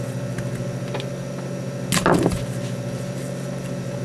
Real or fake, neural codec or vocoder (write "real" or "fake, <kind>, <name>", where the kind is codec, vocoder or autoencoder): real